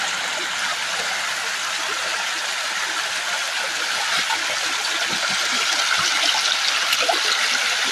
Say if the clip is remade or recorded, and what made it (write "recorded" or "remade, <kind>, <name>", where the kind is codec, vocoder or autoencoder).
recorded